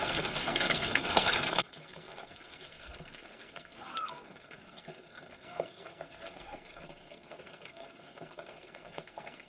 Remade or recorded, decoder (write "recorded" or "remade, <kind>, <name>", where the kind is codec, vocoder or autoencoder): remade, codec, SNAC